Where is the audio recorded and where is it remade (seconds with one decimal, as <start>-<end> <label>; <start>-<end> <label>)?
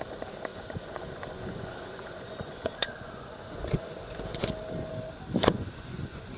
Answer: 0.0-0.5 recorded; 0.5-4.2 remade; 4.2-5.4 recorded; 5.4-6.4 remade